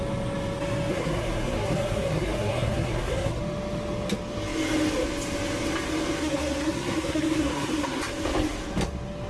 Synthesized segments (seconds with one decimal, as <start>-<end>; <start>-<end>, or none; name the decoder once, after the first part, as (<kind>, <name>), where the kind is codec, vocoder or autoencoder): 0.9-3.4 (codec, SNAC); 6.2-8.0